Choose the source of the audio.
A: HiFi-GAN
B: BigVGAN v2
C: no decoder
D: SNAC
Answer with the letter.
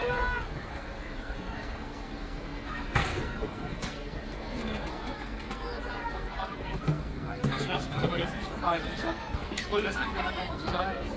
D